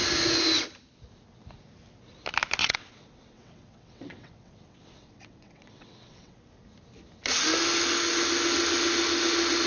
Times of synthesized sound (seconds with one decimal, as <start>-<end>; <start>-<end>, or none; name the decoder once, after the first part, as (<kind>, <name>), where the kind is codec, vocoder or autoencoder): 2.6-6.4 (vocoder, WaveNeXt)